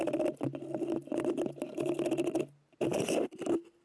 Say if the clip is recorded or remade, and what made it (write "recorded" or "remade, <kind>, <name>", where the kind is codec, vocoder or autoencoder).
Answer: recorded